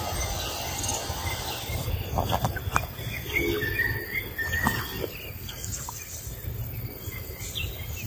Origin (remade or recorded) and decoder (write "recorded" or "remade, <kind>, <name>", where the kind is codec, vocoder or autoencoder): recorded